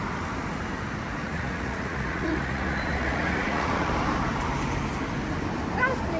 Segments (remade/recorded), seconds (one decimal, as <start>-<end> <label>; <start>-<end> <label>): 0.0-1.2 recorded; 1.2-3.9 remade; 3.9-6.2 recorded